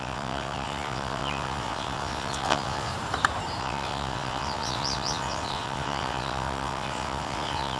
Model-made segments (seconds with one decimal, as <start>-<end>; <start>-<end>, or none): 0.0-2.9; 3.6-7.8